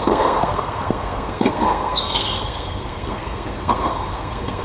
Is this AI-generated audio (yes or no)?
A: yes